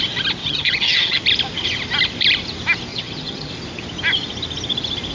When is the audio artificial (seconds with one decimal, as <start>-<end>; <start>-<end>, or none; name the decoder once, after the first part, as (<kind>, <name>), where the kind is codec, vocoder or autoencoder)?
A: 0.4-1.2 (vocoder, HiFi-GAN); 2.9-3.5